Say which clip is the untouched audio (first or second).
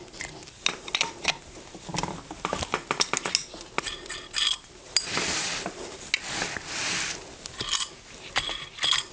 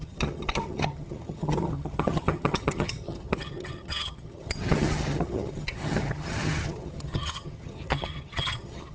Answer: first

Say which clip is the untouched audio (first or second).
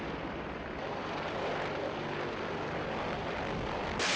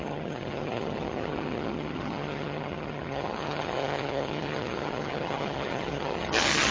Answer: first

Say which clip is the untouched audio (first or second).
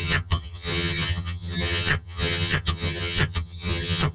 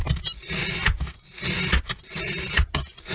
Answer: second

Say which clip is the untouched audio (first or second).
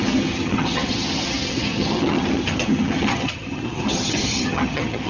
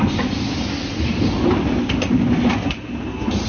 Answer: second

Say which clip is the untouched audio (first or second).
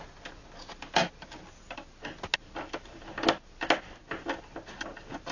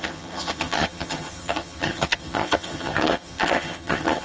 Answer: first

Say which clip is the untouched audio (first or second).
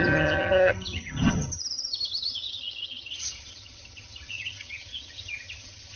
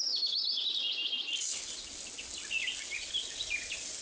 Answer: second